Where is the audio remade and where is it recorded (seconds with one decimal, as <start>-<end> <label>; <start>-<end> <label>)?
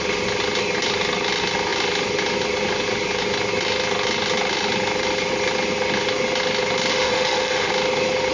0.0-6.9 recorded; 6.9-7.7 remade; 7.7-8.3 recorded